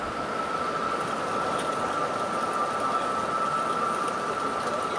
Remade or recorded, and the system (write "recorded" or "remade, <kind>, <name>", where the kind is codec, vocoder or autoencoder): recorded